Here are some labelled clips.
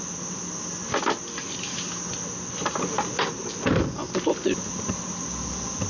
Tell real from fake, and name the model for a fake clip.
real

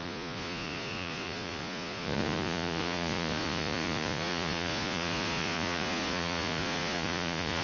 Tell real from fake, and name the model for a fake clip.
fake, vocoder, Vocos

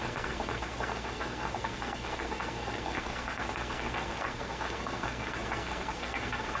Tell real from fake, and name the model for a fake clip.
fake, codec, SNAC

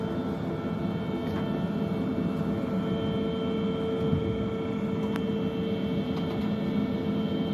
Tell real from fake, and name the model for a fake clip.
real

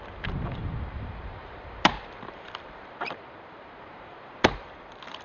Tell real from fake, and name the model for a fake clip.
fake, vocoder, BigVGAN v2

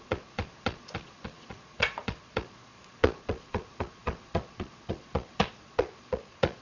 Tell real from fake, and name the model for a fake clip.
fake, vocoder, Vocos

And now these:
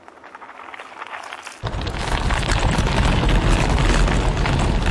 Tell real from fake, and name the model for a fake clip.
real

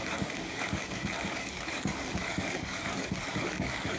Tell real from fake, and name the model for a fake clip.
fake, codec, DAC